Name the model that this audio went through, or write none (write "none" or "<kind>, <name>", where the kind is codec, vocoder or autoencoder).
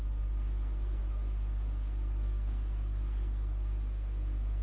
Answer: codec, SNAC